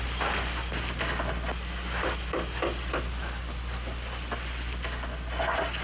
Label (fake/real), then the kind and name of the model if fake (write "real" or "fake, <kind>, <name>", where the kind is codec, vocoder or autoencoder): real